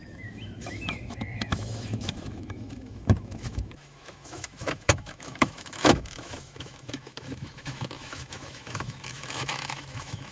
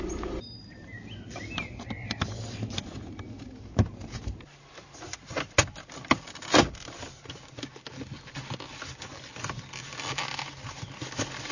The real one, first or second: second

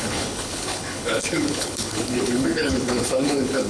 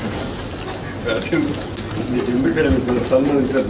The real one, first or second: second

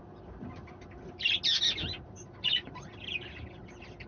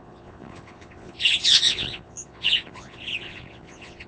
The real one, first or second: first